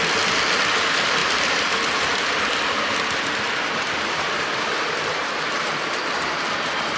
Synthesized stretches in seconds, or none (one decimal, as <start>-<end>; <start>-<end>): none